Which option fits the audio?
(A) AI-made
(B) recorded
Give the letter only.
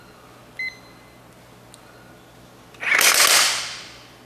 B